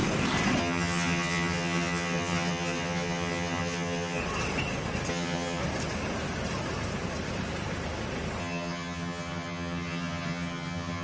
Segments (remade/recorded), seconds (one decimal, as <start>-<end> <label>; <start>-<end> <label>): 0.0-0.6 recorded; 0.6-4.2 remade; 4.2-5.1 recorded; 5.1-5.6 remade; 5.6-8.4 recorded; 8.4-11.0 remade